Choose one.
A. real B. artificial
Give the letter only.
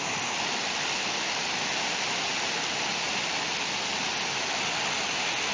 A